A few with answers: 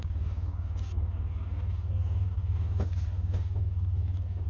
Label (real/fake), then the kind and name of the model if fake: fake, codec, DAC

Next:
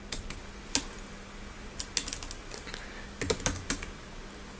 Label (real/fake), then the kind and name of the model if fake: real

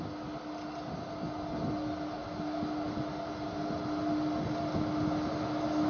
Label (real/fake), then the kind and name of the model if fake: real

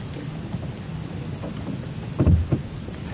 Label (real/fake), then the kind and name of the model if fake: real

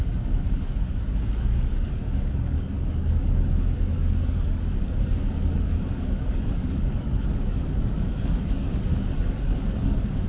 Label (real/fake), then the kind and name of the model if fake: fake, codec, DAC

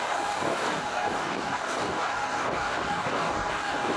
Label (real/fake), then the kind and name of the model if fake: fake, codec, DAC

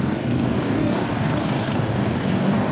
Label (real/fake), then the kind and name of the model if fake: fake, codec, DAC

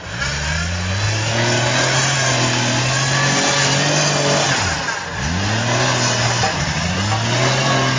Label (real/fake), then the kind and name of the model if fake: real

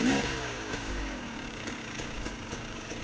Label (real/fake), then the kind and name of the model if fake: fake, codec, DAC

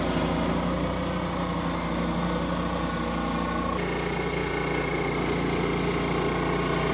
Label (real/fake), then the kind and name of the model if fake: real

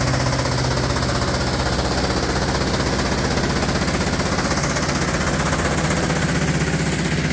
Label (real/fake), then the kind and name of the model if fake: real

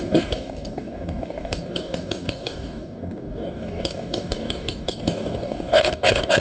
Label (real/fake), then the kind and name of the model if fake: fake, codec, DAC